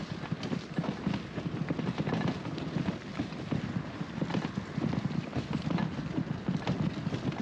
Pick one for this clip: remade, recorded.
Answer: recorded